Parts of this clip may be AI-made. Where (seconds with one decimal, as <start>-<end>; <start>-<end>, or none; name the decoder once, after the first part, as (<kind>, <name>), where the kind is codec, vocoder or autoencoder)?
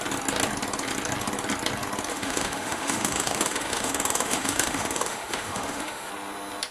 2.1-6.1 (autoencoder, DAC-VAE)